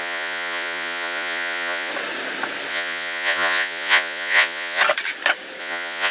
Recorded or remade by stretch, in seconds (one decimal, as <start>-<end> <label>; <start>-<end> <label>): 0.0-1.9 remade; 1.9-2.7 recorded; 2.7-4.8 remade; 4.8-5.6 recorded; 5.6-6.1 remade